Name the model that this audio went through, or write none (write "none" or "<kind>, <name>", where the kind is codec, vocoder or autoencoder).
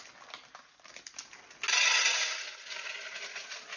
none